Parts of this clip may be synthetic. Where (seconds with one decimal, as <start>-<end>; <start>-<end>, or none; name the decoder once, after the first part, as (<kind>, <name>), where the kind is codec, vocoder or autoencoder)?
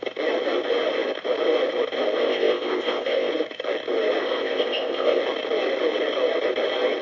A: 2.2-3.3 (codec, ZipCodec); 4.2-5.2